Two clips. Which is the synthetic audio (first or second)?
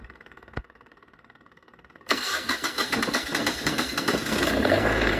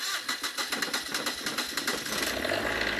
first